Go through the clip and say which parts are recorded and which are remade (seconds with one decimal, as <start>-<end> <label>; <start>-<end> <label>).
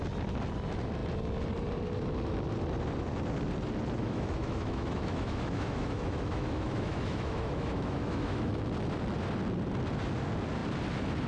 0.0-4.0 recorded; 4.0-8.6 remade; 8.6-11.3 recorded